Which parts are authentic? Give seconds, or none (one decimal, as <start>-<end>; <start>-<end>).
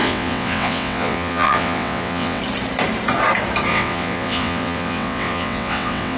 2.4-3.7